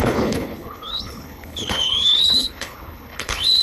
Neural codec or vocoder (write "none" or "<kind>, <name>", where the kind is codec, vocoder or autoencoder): codec, HILCodec